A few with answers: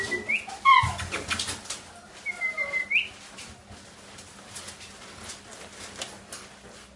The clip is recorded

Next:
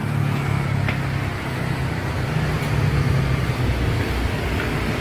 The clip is recorded